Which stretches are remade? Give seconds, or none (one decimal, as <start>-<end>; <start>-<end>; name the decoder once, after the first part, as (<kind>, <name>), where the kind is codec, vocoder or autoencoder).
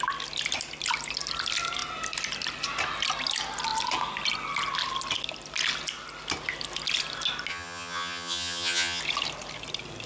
7.5-9.0 (vocoder, HiFi-GAN)